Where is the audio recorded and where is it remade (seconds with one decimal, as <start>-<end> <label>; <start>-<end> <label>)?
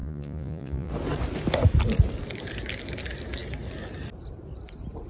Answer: 0.0-0.9 remade; 0.9-5.1 recorded